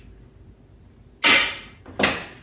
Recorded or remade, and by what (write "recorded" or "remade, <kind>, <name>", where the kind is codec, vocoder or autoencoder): recorded